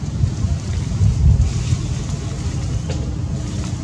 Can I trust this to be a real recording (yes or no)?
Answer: yes